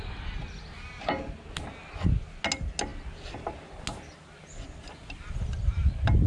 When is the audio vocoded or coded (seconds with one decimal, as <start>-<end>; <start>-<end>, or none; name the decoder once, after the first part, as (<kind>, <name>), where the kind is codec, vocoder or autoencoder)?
none